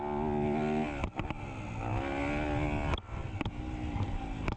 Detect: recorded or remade recorded